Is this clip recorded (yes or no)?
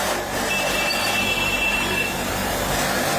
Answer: no